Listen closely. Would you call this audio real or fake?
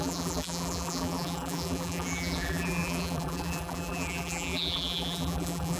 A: fake